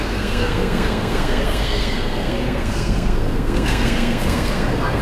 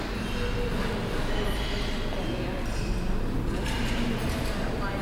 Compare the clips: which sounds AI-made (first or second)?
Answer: first